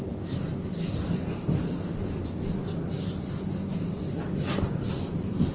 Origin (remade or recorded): recorded